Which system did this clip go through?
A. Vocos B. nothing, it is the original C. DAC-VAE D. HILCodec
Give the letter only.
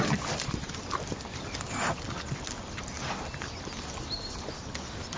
B